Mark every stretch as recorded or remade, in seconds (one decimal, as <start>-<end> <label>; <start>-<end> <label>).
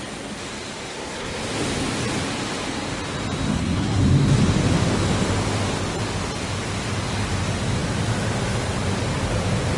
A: 0.0-0.9 recorded; 0.9-1.4 remade; 1.4-3.5 recorded; 3.5-4.0 remade; 4.0-9.8 recorded